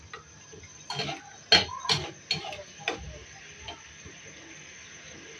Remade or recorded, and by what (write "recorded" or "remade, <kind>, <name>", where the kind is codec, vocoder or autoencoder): recorded